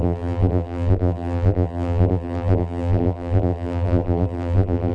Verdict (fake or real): fake